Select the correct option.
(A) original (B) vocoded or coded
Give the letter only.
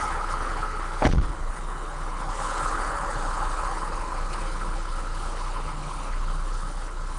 B